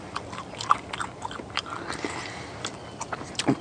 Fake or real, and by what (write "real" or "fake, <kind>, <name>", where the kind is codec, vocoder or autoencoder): real